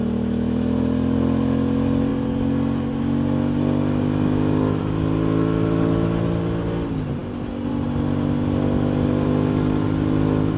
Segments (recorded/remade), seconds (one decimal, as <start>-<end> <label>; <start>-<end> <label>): 0.0-10.6 recorded